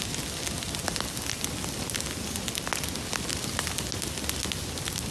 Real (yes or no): yes